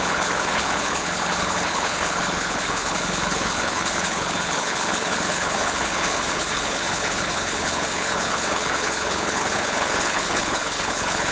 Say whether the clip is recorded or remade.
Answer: remade